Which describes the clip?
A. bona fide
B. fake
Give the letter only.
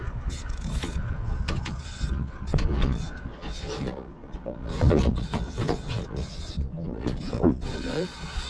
B